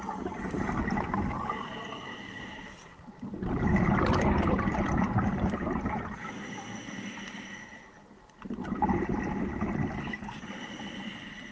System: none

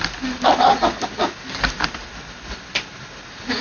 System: none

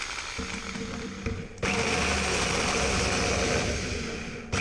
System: none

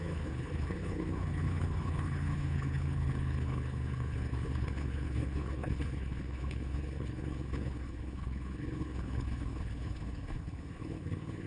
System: codec, HILCodec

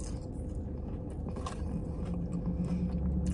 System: none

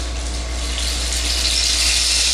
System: none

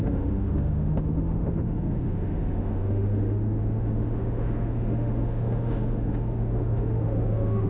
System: autoencoder, DAC-VAE